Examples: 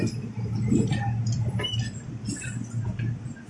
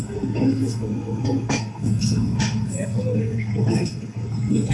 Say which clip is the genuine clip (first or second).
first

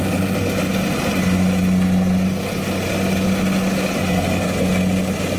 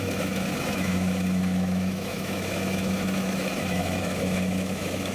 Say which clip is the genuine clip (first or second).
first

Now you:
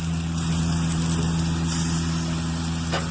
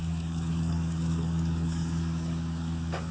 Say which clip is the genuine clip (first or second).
first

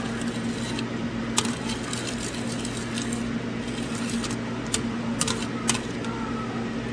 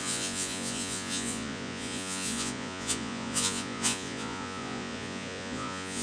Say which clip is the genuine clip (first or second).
first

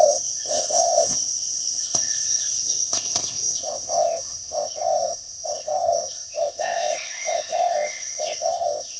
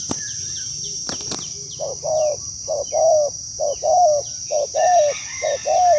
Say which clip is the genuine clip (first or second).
second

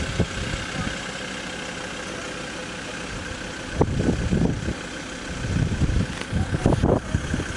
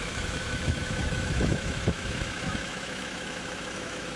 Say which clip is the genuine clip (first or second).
first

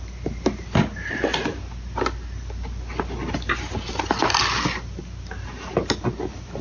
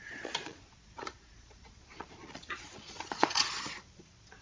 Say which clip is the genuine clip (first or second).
first